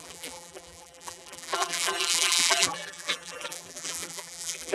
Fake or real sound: fake